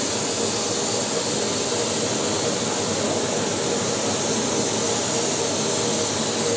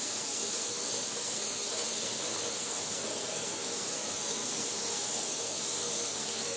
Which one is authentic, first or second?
first